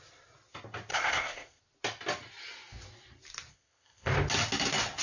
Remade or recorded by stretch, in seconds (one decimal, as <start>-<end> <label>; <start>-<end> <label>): 0.0-0.9 recorded; 0.9-1.6 remade; 1.6-3.5 recorded; 3.5-4.1 remade; 4.1-5.0 recorded